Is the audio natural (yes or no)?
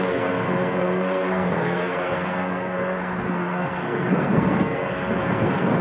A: no